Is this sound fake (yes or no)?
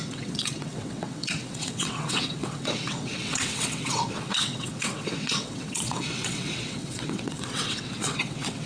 yes